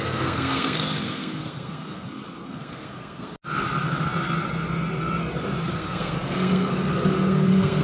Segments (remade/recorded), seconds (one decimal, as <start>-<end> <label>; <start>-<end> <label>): 0.0-3.3 remade; 3.3-5.7 recorded; 5.7-7.8 remade